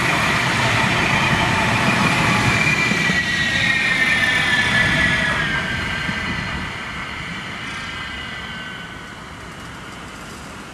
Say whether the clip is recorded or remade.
recorded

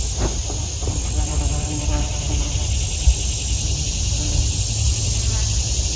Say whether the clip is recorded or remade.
recorded